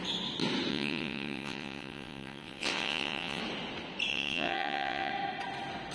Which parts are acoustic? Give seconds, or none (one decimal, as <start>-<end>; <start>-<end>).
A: 0.0-0.7; 3.4-4.1; 5.1-5.9

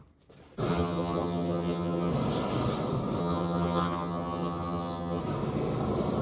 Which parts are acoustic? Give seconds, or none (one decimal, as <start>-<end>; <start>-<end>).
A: 0.0-0.7; 2.1-3.2; 5.2-6.2

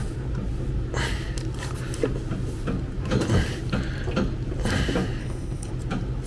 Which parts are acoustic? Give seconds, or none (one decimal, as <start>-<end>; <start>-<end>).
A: 0.0-5.2; 5.7-6.3